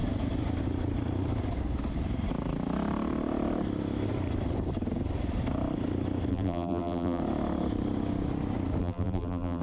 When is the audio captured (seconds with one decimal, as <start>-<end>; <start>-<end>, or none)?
0.0-6.3; 7.2-8.8